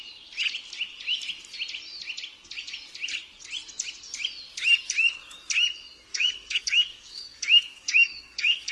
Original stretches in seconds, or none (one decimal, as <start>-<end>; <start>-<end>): 0.0-6.1